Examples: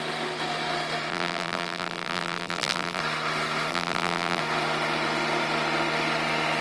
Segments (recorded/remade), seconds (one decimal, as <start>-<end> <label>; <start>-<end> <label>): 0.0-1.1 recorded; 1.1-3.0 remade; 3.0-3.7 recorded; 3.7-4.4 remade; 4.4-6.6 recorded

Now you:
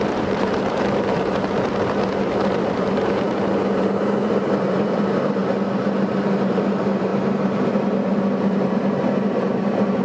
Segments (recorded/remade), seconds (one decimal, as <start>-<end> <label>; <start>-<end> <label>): 0.0-5.4 remade; 5.4-6.1 recorded; 6.1-10.0 remade

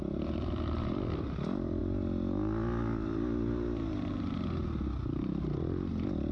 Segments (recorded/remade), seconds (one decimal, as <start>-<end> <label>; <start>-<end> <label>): 0.0-1.8 remade; 1.8-5.6 recorded; 5.6-6.3 remade

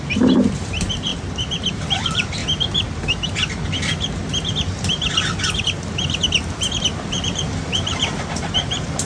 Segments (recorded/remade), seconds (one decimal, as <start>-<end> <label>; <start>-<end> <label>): 0.0-1.1 remade; 1.1-1.7 recorded; 1.7-2.4 remade; 2.4-7.1 recorded; 7.1-9.0 remade

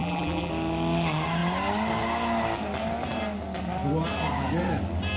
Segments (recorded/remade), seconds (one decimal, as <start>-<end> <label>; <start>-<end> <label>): 0.0-0.5 remade; 0.5-5.2 recorded

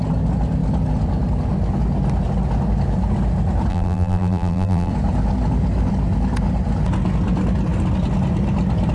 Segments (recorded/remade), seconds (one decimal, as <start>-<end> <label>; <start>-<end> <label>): 0.0-3.7 recorded; 3.7-4.9 remade; 4.9-8.9 recorded

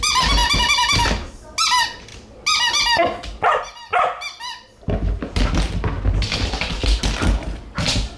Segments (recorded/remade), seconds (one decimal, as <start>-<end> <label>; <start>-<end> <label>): 0.0-8.2 recorded